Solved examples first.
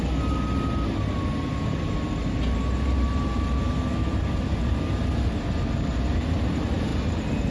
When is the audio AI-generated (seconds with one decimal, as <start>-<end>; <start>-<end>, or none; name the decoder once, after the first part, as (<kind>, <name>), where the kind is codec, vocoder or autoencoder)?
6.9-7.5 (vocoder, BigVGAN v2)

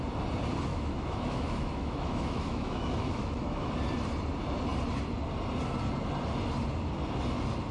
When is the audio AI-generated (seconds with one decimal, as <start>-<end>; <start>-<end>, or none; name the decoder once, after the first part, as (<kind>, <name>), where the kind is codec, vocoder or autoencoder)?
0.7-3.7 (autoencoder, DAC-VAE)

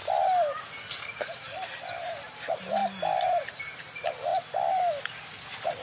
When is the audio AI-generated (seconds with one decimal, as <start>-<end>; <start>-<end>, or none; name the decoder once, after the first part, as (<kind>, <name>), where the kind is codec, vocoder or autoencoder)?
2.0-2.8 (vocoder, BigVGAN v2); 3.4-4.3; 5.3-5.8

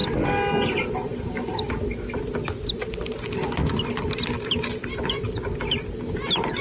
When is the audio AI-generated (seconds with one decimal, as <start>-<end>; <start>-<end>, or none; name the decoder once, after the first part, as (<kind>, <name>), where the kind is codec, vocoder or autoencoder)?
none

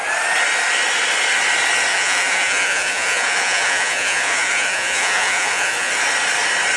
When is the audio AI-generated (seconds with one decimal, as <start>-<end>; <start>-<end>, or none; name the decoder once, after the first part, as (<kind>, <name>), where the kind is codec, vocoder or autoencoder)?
1.9-5.9 (vocoder, Vocos)